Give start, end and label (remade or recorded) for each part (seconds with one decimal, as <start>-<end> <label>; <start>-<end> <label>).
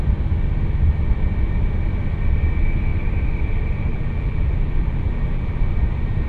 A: 0.0-3.9 recorded; 3.9-5.6 remade; 5.6-6.3 recorded